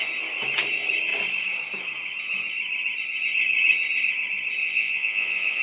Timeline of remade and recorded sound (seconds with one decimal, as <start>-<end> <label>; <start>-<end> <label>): 0.0-4.6 recorded; 4.6-5.6 remade